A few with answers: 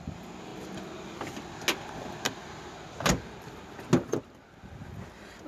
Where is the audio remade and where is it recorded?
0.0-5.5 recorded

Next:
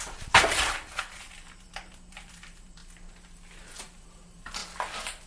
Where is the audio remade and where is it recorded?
0.0-2.8 remade; 2.8-3.7 recorded; 3.7-4.6 remade; 4.6-5.3 recorded

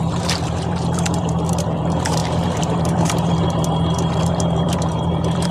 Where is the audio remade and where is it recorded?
0.0-5.5 remade

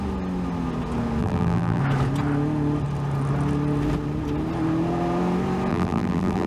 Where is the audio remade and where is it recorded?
0.0-1.2 recorded; 1.2-1.8 remade; 1.8-5.7 recorded; 5.7-6.5 remade

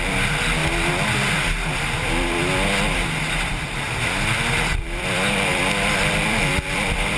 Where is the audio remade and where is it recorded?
0.0-0.6 remade; 0.6-3.5 recorded; 3.5-7.2 remade